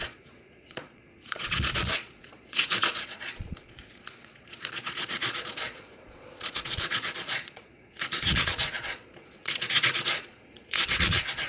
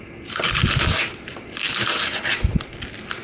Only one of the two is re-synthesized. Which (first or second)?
first